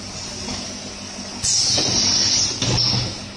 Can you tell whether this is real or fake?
real